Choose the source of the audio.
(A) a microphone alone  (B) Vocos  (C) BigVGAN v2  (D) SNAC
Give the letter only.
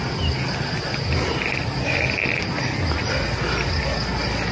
A